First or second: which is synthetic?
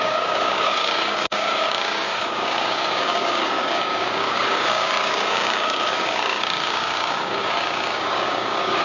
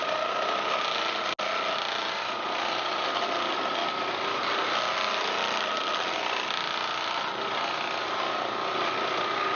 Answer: first